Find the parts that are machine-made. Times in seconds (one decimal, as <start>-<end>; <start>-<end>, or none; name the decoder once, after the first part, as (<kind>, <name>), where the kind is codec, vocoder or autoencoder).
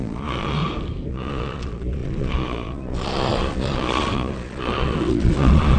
0.0-0.6 (vocoder, Vocos); 1.1-5.8